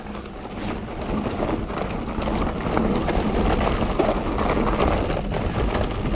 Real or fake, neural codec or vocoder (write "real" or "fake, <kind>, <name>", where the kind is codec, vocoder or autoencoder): real